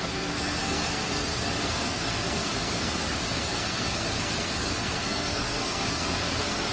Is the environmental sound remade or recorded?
remade